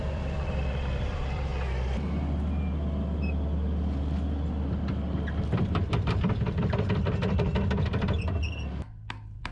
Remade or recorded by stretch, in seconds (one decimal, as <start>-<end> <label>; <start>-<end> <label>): 0.0-1.5 remade; 1.5-6.6 recorded; 6.6-7.5 remade; 7.5-8.4 recorded; 8.4-9.5 remade